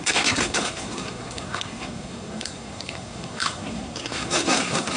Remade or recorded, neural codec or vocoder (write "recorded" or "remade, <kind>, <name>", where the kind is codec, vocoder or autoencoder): remade, codec, SNAC